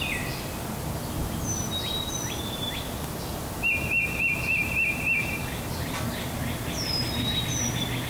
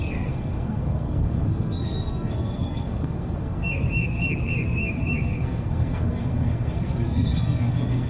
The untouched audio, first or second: first